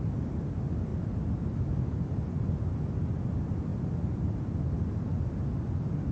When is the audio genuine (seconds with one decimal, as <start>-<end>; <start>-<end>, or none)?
0.0-6.1